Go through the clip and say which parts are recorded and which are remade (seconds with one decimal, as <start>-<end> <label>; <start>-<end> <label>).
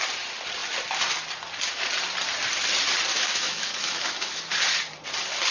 0.0-3.1 recorded; 3.1-4.4 remade; 4.4-5.5 recorded